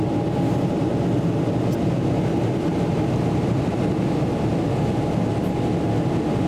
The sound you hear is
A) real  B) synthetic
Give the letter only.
A